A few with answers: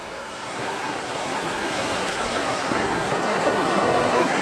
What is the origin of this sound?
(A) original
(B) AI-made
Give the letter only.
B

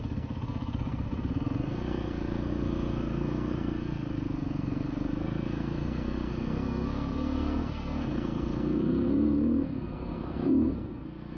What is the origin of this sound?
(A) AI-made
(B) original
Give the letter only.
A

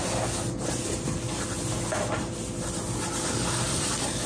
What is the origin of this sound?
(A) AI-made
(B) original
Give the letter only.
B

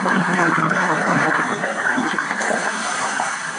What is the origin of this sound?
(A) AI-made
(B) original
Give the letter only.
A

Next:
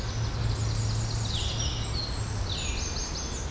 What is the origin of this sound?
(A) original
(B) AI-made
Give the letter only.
A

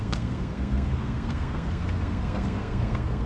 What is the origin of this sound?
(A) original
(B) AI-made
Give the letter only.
B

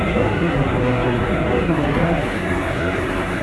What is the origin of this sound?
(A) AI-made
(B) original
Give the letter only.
A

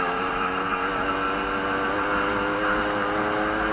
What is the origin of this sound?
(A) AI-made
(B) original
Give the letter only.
B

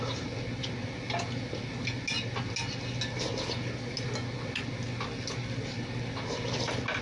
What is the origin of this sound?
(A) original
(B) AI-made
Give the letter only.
A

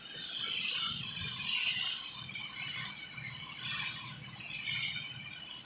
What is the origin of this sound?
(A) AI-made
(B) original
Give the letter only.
B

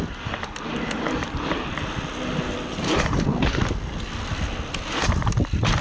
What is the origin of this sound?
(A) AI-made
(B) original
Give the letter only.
B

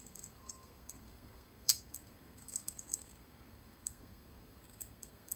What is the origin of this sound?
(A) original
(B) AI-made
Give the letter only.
B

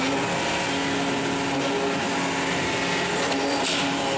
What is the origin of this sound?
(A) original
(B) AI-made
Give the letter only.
A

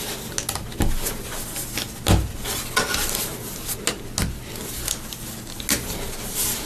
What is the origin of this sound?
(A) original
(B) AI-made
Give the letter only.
A